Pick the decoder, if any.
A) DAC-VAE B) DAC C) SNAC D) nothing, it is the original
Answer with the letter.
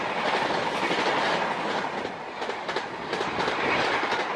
D